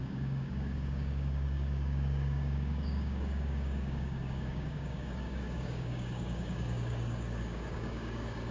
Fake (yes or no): yes